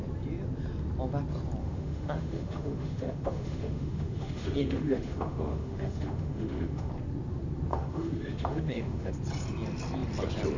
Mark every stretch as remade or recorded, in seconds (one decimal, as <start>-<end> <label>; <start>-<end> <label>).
0.0-1.6 recorded; 1.6-6.9 remade; 6.9-7.7 recorded; 7.7-9.1 remade; 9.1-10.6 recorded